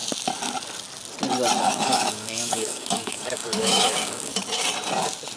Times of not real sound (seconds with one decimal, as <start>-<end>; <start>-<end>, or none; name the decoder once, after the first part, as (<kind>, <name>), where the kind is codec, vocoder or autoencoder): 1.6-4.3 (codec, DAC)